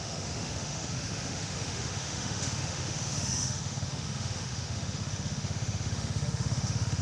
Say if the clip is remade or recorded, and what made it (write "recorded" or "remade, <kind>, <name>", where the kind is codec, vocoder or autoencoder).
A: remade, autoencoder, DAC-VAE